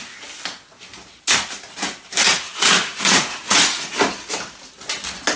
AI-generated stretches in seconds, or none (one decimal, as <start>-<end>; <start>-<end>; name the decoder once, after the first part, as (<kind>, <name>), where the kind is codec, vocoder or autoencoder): 2.3-4.0 (vocoder, Vocos)